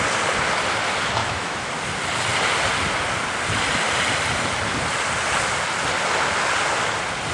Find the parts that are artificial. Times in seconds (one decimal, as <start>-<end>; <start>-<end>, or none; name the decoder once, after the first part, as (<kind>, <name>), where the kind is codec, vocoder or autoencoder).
1.2-1.7 (autoencoder, DAC-VAE)